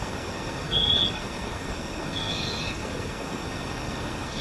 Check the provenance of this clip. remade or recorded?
remade